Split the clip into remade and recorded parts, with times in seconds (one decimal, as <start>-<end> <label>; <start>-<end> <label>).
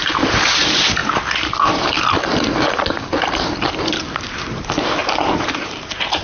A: 0.0-1.0 remade; 1.0-4.2 recorded; 4.2-6.2 remade